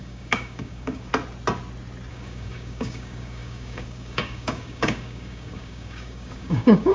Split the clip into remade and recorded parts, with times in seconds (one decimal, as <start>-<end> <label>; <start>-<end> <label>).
0.0-1.1 remade; 1.1-2.1 recorded; 2.1-6.9 remade